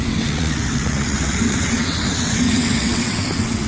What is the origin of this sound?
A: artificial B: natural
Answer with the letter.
A